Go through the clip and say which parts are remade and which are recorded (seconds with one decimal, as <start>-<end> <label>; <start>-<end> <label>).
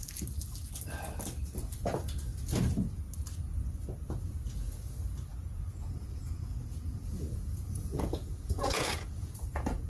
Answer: 0.0-5.3 recorded; 5.3-9.9 remade